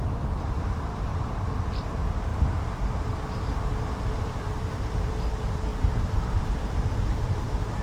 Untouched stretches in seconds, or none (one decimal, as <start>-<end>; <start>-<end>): 1.1-1.7; 2.3-4.1